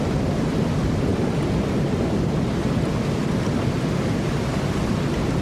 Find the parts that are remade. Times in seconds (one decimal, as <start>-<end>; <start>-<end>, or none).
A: none